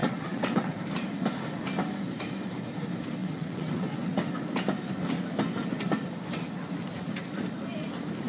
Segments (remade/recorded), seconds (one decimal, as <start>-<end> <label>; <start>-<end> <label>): 0.0-0.8 remade; 0.8-3.2 recorded; 3.2-4.3 remade; 4.3-8.3 recorded